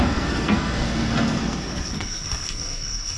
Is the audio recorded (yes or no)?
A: no